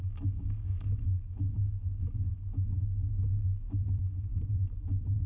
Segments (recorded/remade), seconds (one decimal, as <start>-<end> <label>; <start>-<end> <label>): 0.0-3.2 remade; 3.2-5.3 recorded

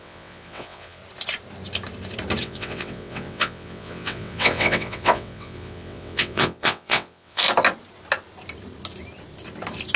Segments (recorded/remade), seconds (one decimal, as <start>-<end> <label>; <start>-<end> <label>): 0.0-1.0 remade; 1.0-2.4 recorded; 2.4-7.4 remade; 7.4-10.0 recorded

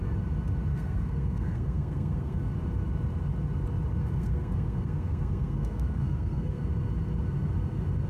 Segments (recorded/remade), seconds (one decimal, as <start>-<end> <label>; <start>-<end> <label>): 0.0-0.7 recorded; 0.7-2.4 remade; 2.4-4.0 recorded; 4.0-6.6 remade; 6.6-8.1 recorded